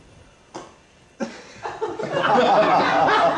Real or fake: real